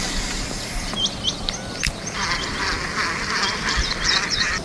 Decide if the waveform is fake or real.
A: real